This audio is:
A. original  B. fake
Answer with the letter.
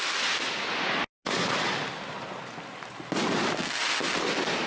A